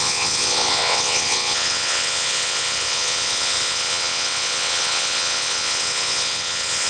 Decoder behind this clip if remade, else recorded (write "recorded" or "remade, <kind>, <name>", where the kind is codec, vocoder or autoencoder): remade, vocoder, WaveNeXt